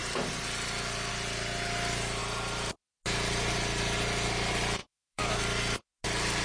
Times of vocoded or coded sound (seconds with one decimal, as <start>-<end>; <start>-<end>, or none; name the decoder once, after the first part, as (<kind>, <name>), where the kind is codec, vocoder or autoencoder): 4.8-5.4 (autoencoder, DAC-VAE)